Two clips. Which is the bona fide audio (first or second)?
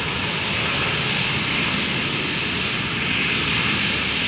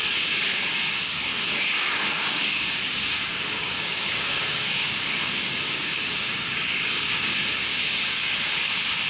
first